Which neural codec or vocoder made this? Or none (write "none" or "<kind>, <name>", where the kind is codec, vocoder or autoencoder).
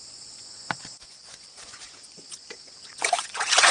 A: vocoder, Vocos